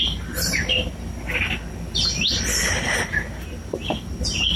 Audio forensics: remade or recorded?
recorded